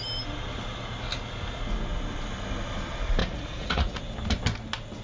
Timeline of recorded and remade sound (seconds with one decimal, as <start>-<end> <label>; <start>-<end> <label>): 0.0-3.2 recorded; 3.2-4.0 remade; 4.0-5.0 recorded

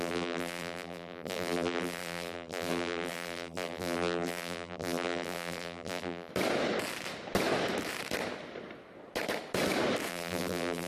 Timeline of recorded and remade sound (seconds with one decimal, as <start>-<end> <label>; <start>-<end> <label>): 0.0-6.3 remade; 6.3-10.1 recorded; 10.1-10.9 remade

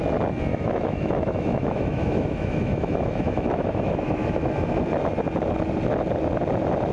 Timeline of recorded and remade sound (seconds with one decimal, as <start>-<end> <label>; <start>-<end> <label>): 0.0-0.5 recorded; 0.5-4.6 remade; 4.6-6.9 recorded

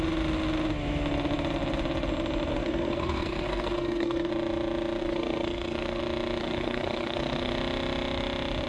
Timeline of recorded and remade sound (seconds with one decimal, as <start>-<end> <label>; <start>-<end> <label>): 0.0-2.5 recorded; 2.5-4.3 remade; 4.3-5.0 recorded; 5.0-6.0 remade; 6.0-6.4 recorded; 6.4-7.5 remade; 7.5-8.7 recorded

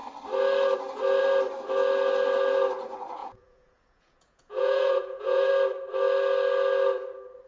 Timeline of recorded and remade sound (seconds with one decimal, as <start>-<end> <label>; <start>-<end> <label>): 0.0-3.2 recorded; 3.2-5.5 remade; 5.5-7.5 recorded